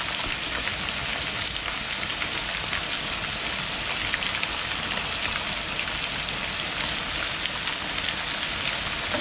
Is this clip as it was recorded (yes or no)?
yes